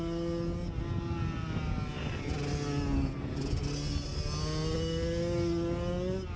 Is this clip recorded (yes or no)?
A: yes